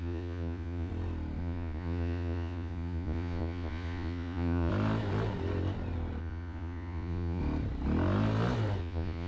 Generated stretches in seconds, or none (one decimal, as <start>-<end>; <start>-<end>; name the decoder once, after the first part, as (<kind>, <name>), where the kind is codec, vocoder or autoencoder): 0.0-0.9 (vocoder, Vocos); 1.4-4.7; 6.2-7.4; 8.8-9.3